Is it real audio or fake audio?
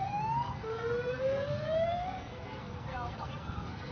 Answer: fake